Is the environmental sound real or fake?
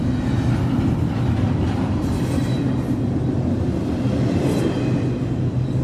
real